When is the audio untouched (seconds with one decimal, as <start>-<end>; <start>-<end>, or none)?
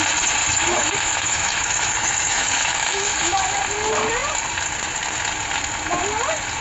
0.0-0.4; 3.4-6.6